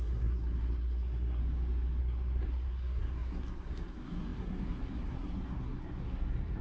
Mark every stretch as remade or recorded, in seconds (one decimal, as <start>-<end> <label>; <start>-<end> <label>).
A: 0.0-1.4 remade; 1.4-2.0 recorded; 2.0-6.6 remade